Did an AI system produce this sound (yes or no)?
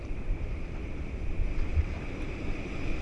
yes